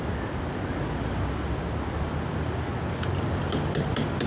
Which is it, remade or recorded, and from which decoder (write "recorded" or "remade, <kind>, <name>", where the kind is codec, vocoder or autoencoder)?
recorded